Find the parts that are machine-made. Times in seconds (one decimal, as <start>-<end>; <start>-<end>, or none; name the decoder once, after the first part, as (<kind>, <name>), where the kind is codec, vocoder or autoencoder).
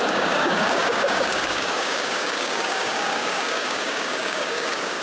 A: 0.0-5.0 (codec, DAC)